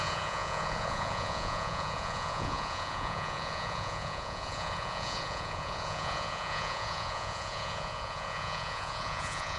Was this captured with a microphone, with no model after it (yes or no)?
no